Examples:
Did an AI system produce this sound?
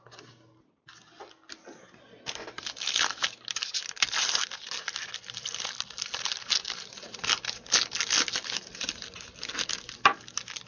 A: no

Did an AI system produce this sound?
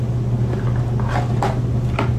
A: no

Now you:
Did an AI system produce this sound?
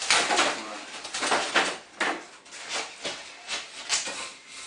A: no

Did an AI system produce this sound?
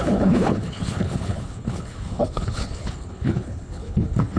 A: yes